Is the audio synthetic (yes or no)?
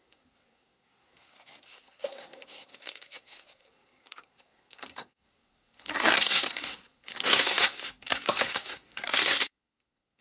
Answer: yes